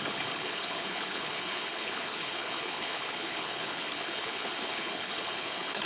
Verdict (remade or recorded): remade